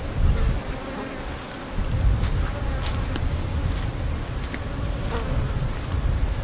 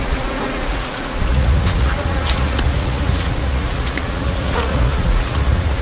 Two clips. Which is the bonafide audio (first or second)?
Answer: first